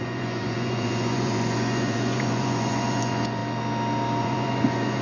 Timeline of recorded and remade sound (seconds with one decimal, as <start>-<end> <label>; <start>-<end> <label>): 0.0-3.4 remade; 3.4-4.2 recorded; 4.2-5.0 remade